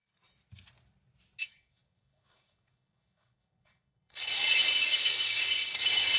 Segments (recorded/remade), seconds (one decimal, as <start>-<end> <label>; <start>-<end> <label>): 0.0-1.4 recorded; 1.4-6.2 remade